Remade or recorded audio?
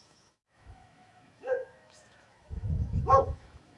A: remade